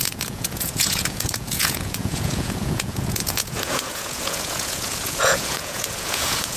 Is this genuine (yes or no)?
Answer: no